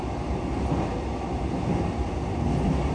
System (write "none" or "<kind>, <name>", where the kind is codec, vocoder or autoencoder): none